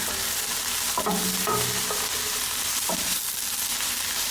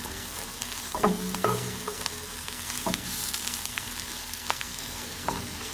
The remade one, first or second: second